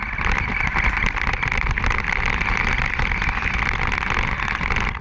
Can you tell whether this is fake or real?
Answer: real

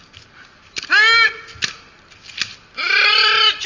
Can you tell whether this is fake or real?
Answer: real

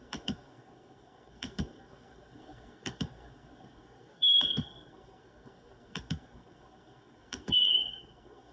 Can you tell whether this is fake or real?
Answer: fake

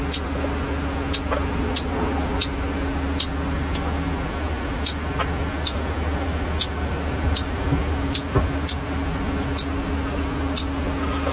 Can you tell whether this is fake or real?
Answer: real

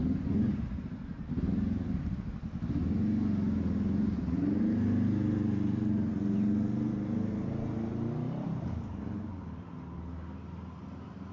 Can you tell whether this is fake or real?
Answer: real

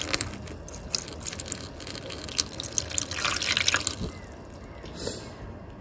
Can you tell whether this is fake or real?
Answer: real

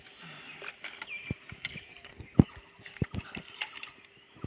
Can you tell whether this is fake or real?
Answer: real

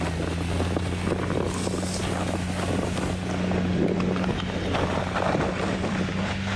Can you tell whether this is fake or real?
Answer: real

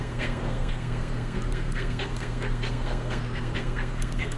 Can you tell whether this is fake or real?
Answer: fake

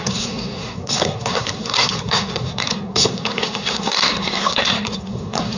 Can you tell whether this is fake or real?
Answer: fake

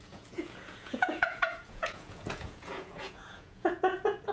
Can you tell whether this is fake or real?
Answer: fake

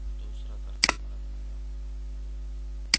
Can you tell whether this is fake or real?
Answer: real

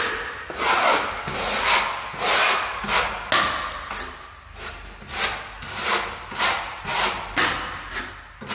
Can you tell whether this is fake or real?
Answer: real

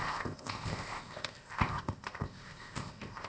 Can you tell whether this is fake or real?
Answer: fake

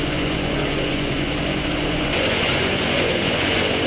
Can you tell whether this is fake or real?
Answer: fake